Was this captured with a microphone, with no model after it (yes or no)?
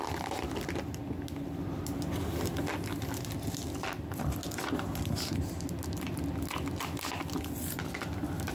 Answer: yes